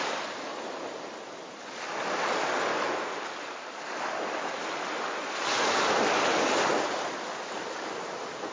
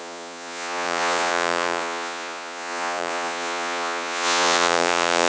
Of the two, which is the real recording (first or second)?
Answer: first